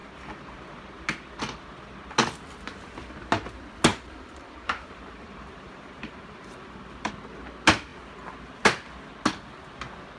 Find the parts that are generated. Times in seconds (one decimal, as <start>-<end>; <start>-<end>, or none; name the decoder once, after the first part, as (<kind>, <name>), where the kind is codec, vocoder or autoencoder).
0.0-0.6 (vocoder, BigVGAN v2); 3.9-7.1

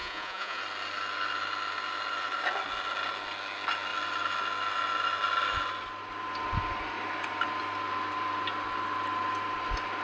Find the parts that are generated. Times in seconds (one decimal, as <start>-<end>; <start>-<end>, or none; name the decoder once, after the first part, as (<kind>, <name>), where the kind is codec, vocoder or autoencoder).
0.0-0.6 (vocoder, Vocos)

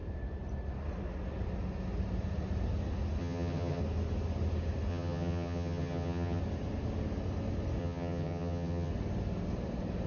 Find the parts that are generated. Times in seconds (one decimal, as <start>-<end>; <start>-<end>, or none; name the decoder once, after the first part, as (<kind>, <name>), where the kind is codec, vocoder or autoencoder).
3.2-3.8 (vocoder, HiFi-GAN); 4.9-6.4; 7.8-8.9

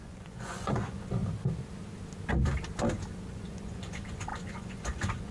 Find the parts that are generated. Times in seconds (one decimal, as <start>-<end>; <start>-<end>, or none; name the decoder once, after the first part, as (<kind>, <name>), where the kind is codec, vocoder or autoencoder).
0.0-1.2 (vocoder, Vocos); 3.3-5.3